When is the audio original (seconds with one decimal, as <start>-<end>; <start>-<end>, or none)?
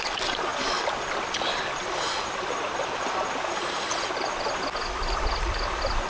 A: 0.0-0.5; 3.2-6.1